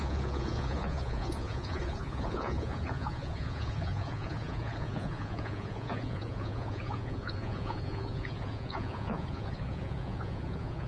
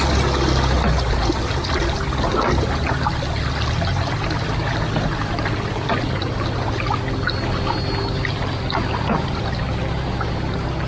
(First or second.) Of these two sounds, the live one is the second